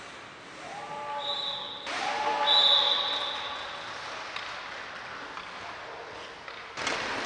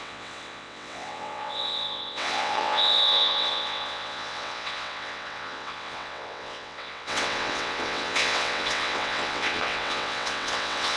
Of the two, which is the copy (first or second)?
second